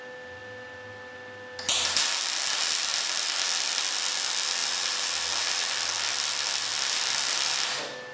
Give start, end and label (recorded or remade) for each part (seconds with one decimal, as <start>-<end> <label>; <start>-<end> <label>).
0.0-2.9 recorded; 2.9-3.8 remade; 3.8-4.6 recorded; 4.6-6.3 remade; 6.3-6.7 recorded; 6.7-7.5 remade; 7.5-8.1 recorded